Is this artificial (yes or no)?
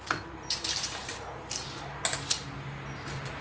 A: no